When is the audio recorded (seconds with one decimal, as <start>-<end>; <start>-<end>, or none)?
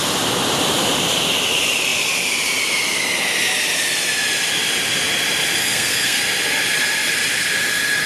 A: 0.0-5.6; 6.2-8.1